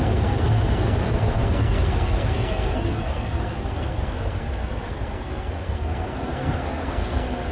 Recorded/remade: remade